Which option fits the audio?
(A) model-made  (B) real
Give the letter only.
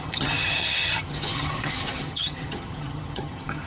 A